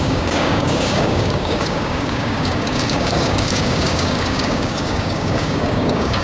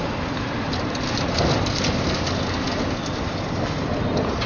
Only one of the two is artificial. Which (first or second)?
first